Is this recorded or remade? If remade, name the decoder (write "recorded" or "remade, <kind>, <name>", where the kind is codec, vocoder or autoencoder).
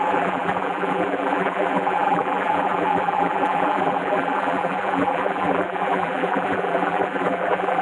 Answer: remade, vocoder, BigVGAN v2